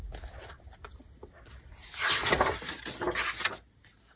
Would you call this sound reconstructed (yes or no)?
no